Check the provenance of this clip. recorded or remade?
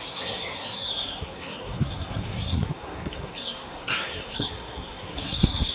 remade